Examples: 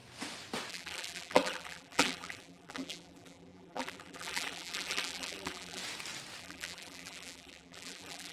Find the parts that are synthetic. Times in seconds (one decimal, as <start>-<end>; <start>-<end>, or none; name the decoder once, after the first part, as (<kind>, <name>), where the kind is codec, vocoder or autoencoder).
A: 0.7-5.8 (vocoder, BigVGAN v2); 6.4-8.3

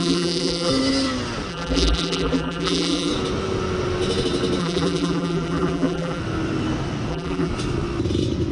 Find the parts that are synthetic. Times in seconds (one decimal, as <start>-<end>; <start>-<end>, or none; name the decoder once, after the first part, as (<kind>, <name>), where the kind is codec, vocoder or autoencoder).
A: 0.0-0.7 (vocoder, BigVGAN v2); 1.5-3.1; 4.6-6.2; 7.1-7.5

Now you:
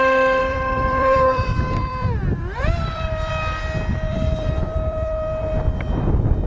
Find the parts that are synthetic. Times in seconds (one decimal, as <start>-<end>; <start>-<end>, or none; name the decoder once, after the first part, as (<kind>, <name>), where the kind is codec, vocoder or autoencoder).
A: 0.4-3.3 (vocoder, BigVGAN v2); 4.1-5.5

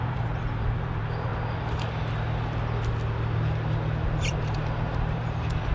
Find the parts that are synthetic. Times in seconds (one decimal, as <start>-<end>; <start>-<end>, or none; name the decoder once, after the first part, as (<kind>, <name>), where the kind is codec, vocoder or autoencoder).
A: 0.0-1.3 (vocoder, BigVGAN v2); 4.3-5.7